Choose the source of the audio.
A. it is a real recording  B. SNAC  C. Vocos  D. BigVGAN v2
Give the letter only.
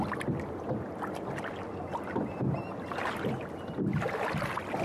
A